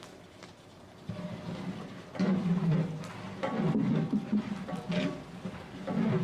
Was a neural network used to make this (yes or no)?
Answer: no